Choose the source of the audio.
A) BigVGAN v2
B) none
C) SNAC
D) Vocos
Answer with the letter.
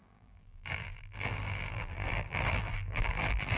A